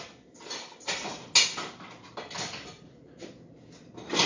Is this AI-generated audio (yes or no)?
no